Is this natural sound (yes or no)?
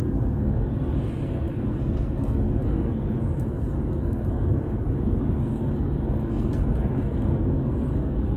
no